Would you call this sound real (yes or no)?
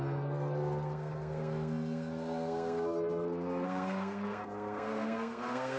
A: no